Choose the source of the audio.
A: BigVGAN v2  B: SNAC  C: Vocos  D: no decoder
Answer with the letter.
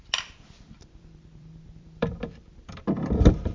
A